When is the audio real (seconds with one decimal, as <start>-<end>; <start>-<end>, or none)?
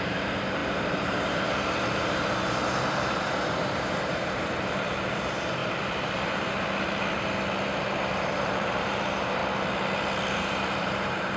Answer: 5.6-8.1; 9.4-10.3